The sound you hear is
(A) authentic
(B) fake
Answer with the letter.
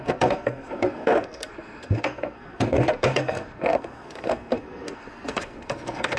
B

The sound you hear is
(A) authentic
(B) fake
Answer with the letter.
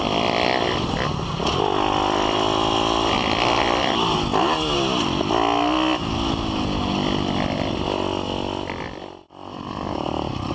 A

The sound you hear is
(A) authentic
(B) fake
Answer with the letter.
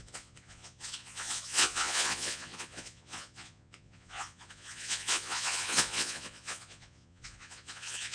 B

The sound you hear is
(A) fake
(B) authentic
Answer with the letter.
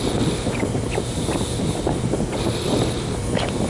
B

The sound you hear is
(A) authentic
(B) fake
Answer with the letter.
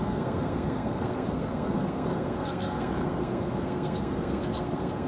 B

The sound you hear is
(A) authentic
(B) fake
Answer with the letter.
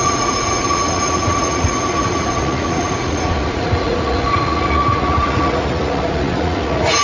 B